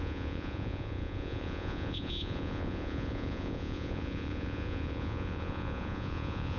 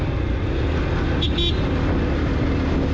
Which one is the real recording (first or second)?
second